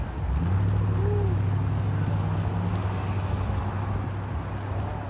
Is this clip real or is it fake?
real